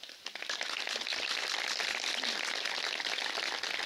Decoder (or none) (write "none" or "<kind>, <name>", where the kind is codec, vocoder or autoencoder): none